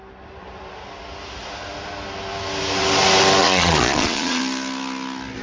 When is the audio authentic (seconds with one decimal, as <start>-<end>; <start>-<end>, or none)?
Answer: 0.0-3.4; 4.4-5.4